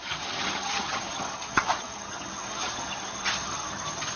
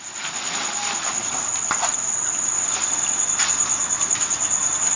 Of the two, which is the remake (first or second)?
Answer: first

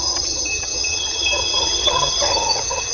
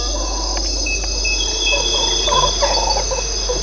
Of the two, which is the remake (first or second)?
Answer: first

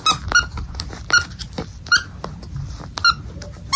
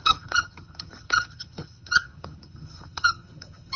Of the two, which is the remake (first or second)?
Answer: second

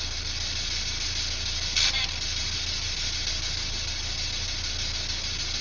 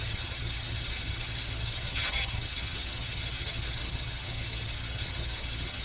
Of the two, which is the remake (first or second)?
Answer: second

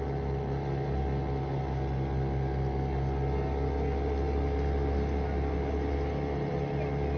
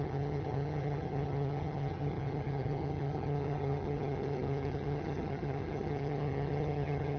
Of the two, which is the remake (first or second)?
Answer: second